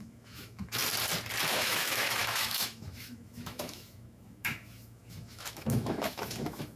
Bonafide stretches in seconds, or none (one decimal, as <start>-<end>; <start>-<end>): 0.8-1.5

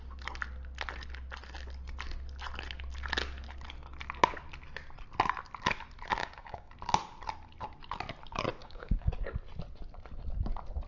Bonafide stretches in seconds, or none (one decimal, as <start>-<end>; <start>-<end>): 0.0-6.2; 6.7-8.6; 9.1-10.9